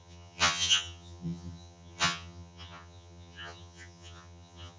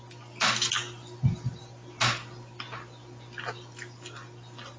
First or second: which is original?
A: second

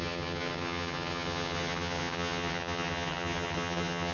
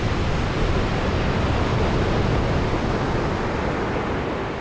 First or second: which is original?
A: second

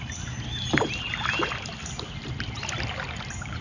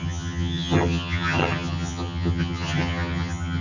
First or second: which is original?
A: first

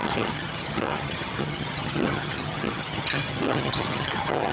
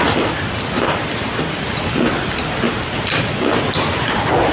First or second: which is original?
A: second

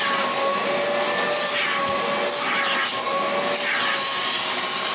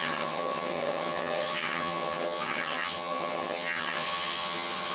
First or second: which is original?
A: first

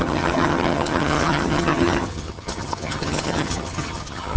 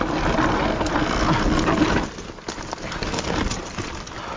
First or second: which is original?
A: second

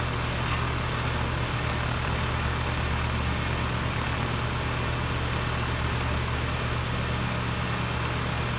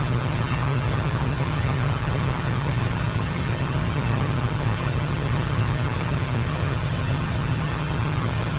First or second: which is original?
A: first